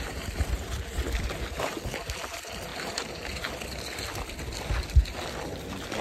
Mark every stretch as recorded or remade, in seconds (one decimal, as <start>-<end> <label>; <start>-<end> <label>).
0.0-2.7 recorded; 2.7-3.5 remade; 3.5-6.0 recorded